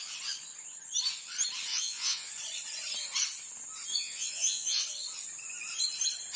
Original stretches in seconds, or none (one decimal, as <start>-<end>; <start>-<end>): 0.0-1.7; 2.3-3.9; 4.8-6.4